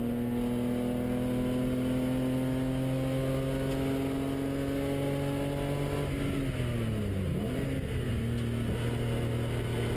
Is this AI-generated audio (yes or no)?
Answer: no